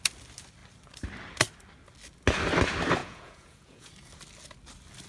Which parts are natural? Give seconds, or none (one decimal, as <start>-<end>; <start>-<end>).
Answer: 0.0-3.0; 3.9-5.1